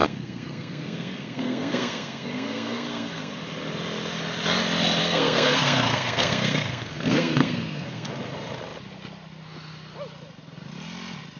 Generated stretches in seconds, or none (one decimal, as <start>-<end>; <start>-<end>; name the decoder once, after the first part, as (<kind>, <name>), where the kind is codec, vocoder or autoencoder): 0.0-3.3 (codec, SNAC); 5.0-8.1